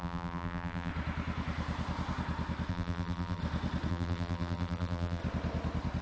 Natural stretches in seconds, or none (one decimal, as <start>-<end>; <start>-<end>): 0.9-2.7; 3.4-3.9; 5.2-6.0